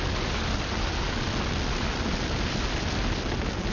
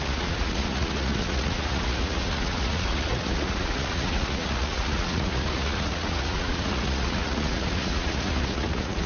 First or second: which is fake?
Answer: second